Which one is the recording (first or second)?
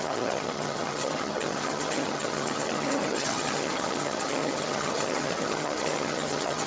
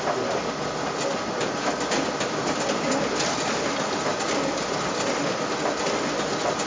second